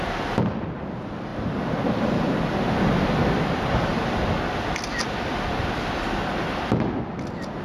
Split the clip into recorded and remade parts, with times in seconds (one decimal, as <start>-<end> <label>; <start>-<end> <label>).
0.0-7.6 recorded

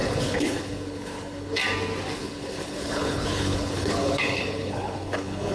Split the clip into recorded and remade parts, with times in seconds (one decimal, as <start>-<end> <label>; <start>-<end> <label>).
0.0-1.6 remade; 1.6-2.2 recorded; 2.2-5.5 remade

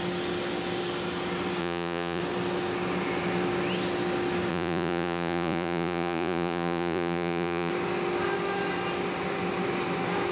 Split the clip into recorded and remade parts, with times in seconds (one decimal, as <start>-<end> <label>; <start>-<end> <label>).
0.0-1.6 recorded; 1.6-2.2 remade; 2.2-4.5 recorded; 4.5-7.7 remade; 7.7-10.3 recorded

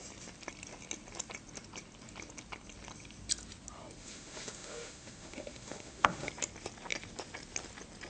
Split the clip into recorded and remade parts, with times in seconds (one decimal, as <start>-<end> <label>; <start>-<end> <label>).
0.0-4.0 recorded; 4.0-6.3 remade; 6.3-8.1 recorded

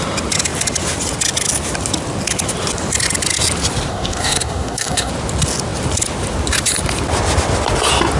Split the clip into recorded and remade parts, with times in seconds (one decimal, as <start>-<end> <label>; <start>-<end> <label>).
0.0-3.9 recorded; 3.9-5.1 remade; 5.1-8.2 recorded

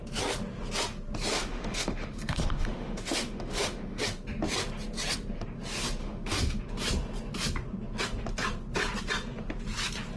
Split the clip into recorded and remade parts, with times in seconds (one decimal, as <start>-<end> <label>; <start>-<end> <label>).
0.0-1.3 recorded; 1.3-4.0 remade; 4.0-6.0 recorded; 6.0-6.6 remade; 6.6-10.2 recorded